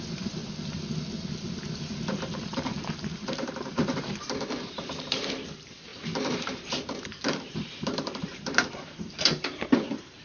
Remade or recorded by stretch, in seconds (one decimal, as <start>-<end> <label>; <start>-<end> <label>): 0.0-0.4 remade; 0.4-1.9 recorded; 1.9-10.2 remade